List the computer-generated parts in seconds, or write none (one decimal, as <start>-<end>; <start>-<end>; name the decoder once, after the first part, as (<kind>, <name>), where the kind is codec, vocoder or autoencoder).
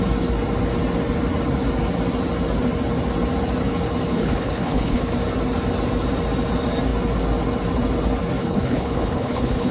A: 4.1-5.1 (codec, HILCodec); 8.4-9.7